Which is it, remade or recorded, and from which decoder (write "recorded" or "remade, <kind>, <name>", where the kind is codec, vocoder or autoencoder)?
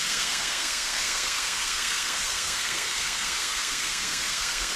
remade, codec, SNAC